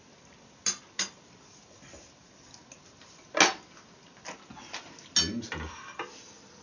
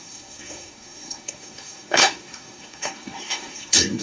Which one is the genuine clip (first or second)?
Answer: first